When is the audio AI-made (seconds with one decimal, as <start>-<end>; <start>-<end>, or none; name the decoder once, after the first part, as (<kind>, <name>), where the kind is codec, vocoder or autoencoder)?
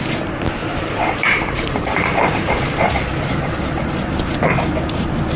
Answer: 0.6-2.5 (vocoder, BigVGAN v2)